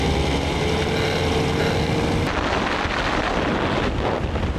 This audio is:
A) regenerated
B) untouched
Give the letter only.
B